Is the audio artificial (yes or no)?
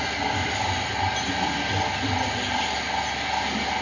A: no